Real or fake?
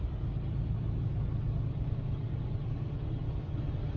real